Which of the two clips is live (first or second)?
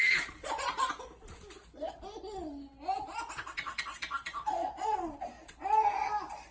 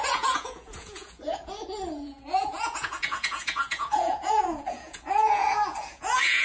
first